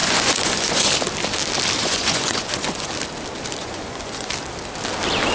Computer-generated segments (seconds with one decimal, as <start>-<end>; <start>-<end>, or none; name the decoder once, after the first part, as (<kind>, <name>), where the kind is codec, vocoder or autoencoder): 0.0-0.9 (vocoder, Vocos); 1.8-2.9; 3.6-4.3